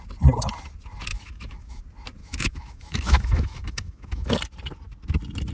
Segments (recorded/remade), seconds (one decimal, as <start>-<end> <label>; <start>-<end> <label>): 0.0-1.1 recorded; 1.1-1.8 remade; 1.8-2.2 recorded; 2.2-4.4 remade; 4.4-5.5 recorded